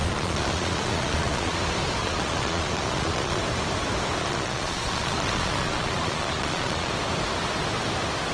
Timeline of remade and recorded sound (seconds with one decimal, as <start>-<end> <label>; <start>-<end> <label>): 0.0-1.6 remade; 1.6-2.0 recorded; 2.0-3.4 remade; 3.4-4.2 recorded; 4.2-6.9 remade; 6.9-8.3 recorded

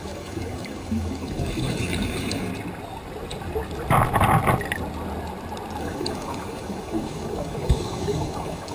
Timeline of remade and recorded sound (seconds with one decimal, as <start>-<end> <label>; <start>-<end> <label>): 0.0-2.5 remade; 2.5-5.8 recorded; 5.8-8.7 remade

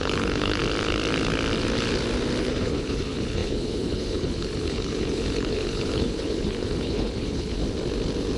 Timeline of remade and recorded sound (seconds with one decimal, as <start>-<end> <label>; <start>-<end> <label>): 0.0-0.6 remade; 0.6-2.4 recorded; 2.4-7.6 remade; 7.6-8.4 recorded

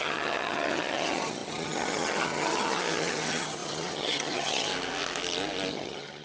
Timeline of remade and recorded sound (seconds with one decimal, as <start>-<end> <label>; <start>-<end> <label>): 0.0-4.7 remade; 4.7-5.7 recorded; 5.7-6.2 remade

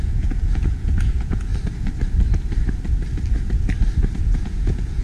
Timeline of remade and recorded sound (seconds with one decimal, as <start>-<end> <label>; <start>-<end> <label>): 0.0-1.5 remade; 1.5-4.2 recorded; 4.2-5.0 remade

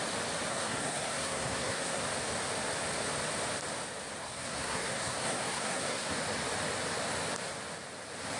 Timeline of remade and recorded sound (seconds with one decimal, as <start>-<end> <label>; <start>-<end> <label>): 0.0-0.5 recorded; 0.5-2.0 remade; 2.0-4.2 recorded; 4.2-6.1 remade; 6.1-8.4 recorded